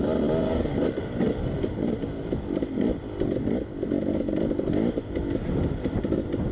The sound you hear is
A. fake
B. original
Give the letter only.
B